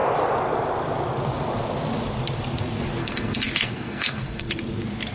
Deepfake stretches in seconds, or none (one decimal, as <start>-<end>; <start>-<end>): 3.0-4.5